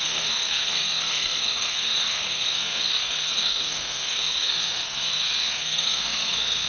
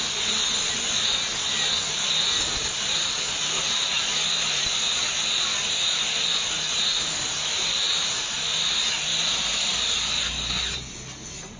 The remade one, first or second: first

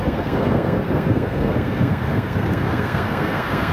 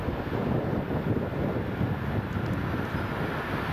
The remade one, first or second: first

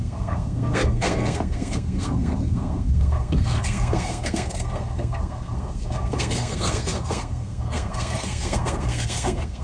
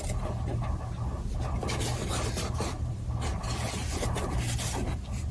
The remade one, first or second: first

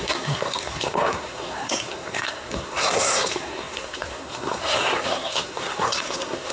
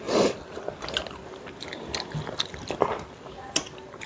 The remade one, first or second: first